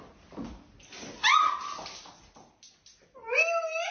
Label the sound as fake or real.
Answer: real